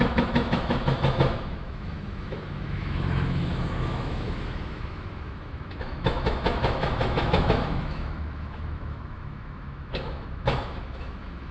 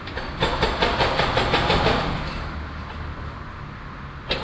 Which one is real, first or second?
second